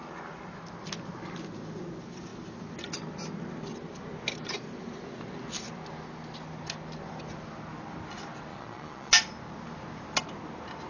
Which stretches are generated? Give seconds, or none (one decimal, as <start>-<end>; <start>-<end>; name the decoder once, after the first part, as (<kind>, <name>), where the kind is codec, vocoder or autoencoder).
8.5-9.1 (vocoder, Vocos)